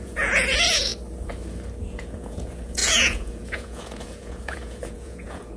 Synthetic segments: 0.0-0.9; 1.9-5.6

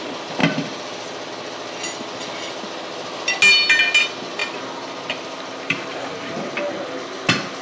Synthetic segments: none

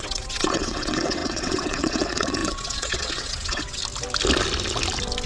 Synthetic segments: 0.0-3.8

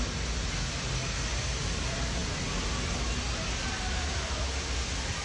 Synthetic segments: none

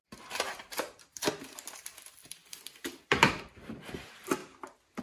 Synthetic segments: 0.0-2.4; 3.9-4.4

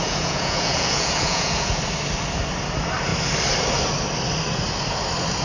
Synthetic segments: 0.0-1.8